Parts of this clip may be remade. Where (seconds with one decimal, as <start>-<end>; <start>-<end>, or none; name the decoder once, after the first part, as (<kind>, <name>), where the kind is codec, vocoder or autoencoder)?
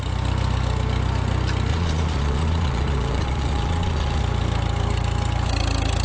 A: 1.7-4.2 (vocoder, Vocos)